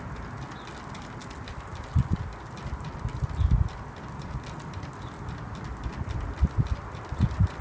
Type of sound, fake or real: real